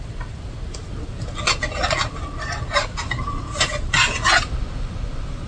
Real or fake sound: real